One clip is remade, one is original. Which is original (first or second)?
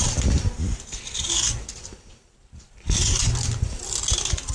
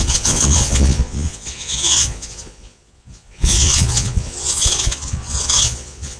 first